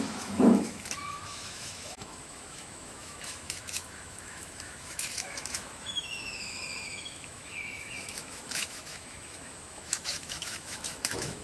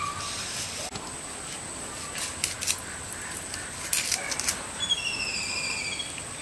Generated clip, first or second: first